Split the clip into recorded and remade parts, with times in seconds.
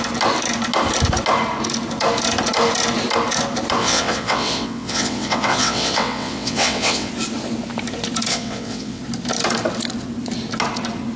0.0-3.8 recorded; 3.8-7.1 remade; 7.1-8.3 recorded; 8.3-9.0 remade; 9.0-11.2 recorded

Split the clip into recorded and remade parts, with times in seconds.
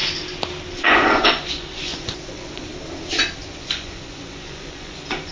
0.0-0.7 recorded; 0.7-2.7 remade; 2.7-3.4 recorded; 3.4-5.3 remade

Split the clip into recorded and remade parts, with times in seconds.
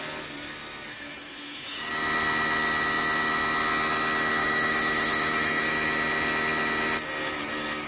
0.0-0.9 recorded; 0.9-1.9 remade; 1.9-4.4 recorded; 4.4-5.7 remade; 5.7-7.9 recorded